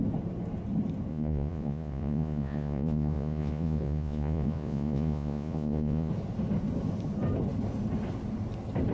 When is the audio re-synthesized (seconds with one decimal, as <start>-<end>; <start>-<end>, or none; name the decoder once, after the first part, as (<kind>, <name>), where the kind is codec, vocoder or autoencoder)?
1.1-6.1 (vocoder, Vocos)